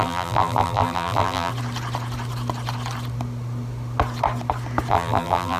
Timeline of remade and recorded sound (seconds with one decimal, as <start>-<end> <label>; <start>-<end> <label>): 0.0-1.5 remade; 1.5-4.9 recorded; 4.9-5.6 remade